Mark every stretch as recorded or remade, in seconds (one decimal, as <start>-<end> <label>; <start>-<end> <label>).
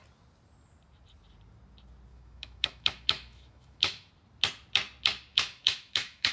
0.0-2.1 recorded; 2.1-4.1 remade; 4.1-5.3 recorded; 5.3-6.3 remade